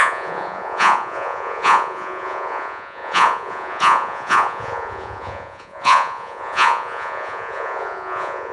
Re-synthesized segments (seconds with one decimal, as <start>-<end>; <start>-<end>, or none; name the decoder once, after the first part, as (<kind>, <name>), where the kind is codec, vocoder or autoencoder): 0.0-8.5 (vocoder, Vocos)